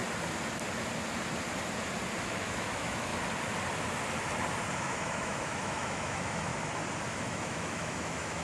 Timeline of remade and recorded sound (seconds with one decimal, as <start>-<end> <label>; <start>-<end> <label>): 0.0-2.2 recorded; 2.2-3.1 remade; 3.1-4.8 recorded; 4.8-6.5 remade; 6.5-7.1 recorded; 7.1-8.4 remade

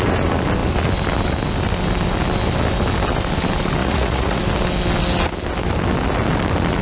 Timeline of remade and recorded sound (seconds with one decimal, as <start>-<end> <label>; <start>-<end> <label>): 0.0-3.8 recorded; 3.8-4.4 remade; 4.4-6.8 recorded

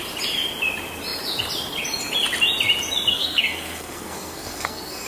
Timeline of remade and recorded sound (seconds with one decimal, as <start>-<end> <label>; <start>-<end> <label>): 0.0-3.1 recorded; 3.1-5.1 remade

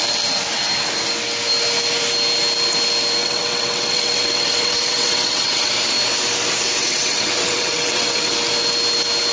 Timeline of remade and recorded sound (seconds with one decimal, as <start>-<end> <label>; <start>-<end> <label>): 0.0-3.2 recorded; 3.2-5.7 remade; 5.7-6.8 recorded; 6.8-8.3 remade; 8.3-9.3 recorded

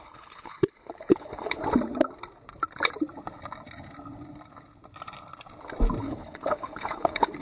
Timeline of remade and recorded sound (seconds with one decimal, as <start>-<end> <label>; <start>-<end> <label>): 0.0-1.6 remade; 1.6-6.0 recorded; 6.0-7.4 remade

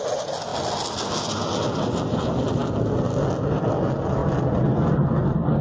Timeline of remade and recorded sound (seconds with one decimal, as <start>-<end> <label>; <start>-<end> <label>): 0.0-0.5 remade; 0.5-1.2 recorded; 1.2-2.6 remade; 2.6-3.5 recorded; 3.5-4.2 remade; 4.2-5.6 recorded

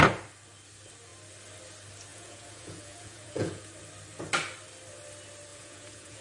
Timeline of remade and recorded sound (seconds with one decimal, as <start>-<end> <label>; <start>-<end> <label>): 0.0-2.1 recorded; 2.1-3.7 remade; 3.7-5.5 recorded; 5.5-6.2 remade

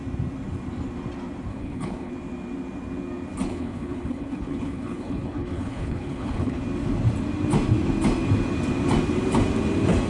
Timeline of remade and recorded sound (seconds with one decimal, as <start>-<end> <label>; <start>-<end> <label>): 0.0-1.5 recorded; 1.5-2.1 remade; 2.1-3.5 recorded; 3.5-6.6 remade; 6.6-10.1 recorded